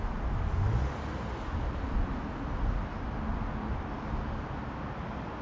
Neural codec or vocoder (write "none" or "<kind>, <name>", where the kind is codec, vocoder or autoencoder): none